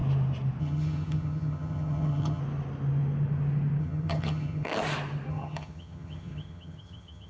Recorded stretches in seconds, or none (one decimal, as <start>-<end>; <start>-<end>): 0.0-0.6; 2.4-3.8; 4.7-5.3